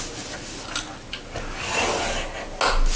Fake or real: real